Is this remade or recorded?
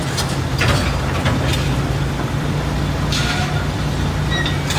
recorded